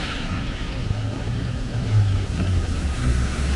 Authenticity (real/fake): fake